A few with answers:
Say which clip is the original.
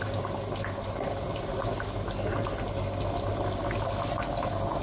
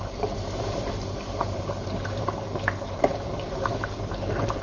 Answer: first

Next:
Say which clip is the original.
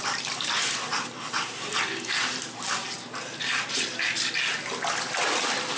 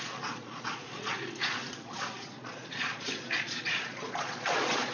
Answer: first